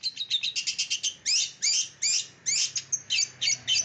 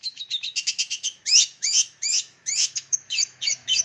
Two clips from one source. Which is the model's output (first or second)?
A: second